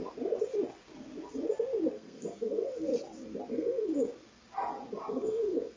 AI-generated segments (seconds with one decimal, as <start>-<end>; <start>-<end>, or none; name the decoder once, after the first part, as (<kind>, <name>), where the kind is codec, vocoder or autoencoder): 1.9-2.9 (codec, SNAC); 3.5-3.9; 5.1-5.8